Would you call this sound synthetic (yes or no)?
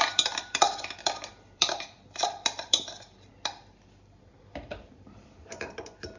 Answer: yes